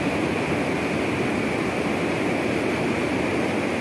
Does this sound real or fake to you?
real